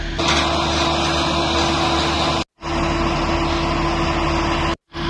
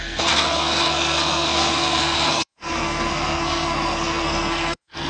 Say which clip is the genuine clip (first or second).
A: first